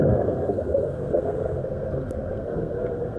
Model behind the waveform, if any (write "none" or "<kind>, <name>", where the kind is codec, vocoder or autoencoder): codec, SNAC